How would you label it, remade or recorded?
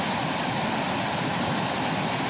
recorded